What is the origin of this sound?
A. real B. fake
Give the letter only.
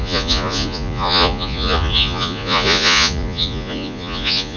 B